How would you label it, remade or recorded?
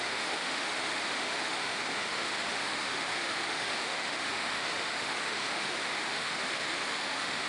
remade